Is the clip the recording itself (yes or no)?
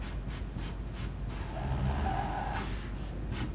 yes